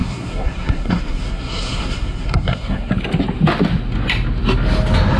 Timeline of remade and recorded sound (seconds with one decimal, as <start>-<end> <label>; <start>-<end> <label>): 0.0-2.9 remade; 2.9-5.2 recorded